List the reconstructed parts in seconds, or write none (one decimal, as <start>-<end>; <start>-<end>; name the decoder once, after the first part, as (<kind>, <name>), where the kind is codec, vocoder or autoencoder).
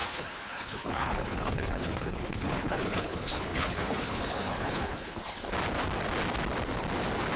0.0-5.4 (codec, HILCodec)